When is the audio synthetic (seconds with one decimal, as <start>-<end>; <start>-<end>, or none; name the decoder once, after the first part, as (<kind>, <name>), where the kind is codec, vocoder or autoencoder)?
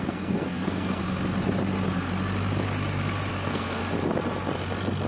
0.0-1.0 (codec, SNAC); 3.3-3.8